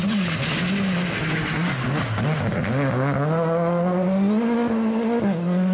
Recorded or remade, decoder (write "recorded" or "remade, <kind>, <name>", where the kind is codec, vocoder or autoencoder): recorded